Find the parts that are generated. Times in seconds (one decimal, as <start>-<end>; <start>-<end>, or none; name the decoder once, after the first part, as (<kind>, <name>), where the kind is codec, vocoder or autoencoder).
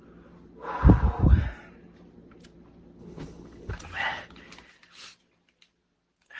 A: 3.0-3.7 (codec, HILCodec)